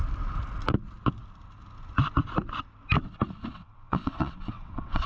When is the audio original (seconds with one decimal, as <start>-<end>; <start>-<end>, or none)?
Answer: 0.0-3.5